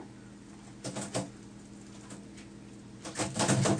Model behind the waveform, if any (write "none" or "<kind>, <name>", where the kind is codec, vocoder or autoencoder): none